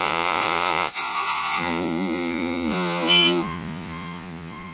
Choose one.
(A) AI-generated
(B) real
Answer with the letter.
A